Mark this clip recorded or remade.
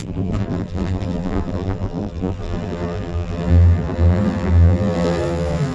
remade